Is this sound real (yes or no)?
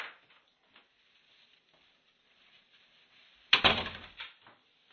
yes